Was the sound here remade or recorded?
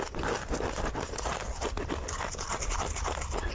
recorded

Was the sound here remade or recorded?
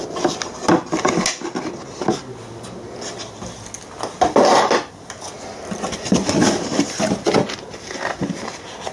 recorded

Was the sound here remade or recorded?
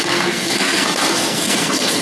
remade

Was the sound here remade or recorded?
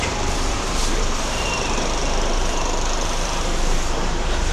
remade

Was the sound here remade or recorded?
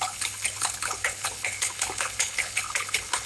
remade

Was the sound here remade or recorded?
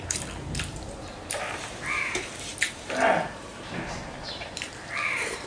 remade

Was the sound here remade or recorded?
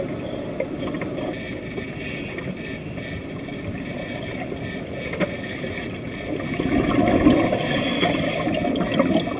recorded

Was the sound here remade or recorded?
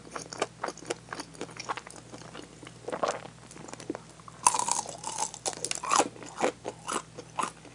recorded